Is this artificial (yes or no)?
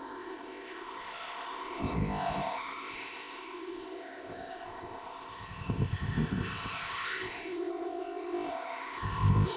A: yes